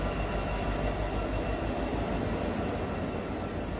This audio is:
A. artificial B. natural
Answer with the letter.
B